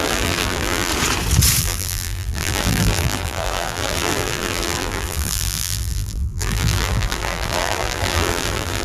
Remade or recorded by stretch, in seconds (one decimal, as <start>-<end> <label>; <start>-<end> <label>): 0.0-0.9 remade; 0.9-1.6 recorded; 1.6-8.8 remade